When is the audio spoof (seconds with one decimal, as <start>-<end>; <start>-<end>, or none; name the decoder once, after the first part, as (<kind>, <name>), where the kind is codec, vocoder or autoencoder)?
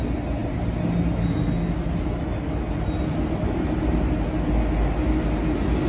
none